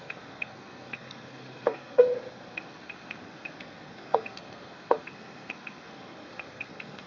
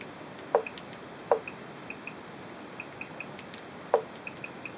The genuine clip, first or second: second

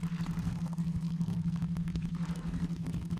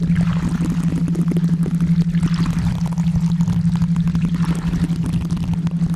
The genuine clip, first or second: second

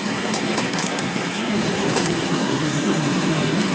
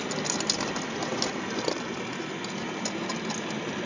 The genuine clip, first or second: second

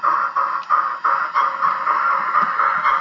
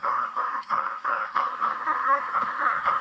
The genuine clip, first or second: first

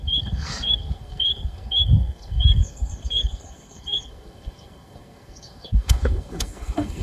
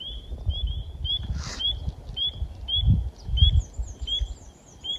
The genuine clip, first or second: second